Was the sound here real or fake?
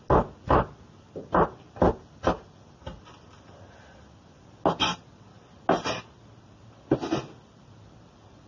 real